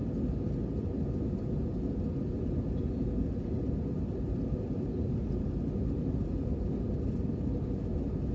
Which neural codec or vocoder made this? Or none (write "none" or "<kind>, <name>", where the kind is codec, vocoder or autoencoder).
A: none